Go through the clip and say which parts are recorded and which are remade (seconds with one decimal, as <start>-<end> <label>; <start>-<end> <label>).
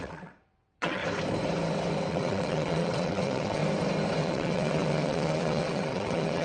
0.0-1.0 remade; 1.0-2.1 recorded; 2.1-3.6 remade; 3.6-4.2 recorded; 4.2-6.4 remade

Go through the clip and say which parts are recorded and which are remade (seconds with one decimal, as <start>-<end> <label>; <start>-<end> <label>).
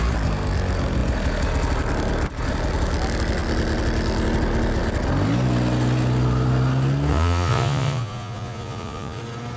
0.0-7.1 recorded; 7.1-9.2 remade; 9.2-9.6 recorded